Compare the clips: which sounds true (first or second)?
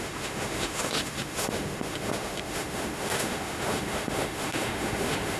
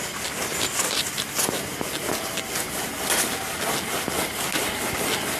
second